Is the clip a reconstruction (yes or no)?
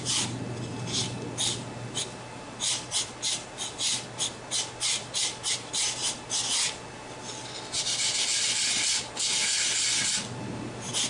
no